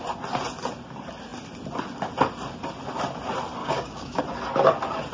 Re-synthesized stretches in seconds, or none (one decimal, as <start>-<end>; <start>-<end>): 3.6-4.2